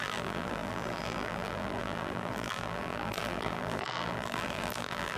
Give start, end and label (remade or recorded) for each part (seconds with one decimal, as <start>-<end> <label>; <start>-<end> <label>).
0.0-5.2 remade